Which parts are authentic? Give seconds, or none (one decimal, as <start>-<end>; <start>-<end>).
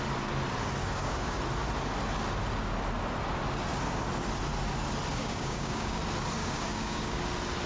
0.0-0.8; 1.4-5.1; 6.0-6.4; 7.2-7.7